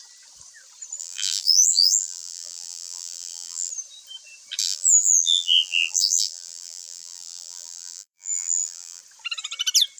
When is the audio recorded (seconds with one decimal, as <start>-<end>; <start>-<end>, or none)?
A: 0.0-1.0; 3.7-4.6; 9.0-10.0